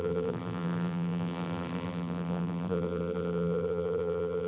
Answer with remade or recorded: remade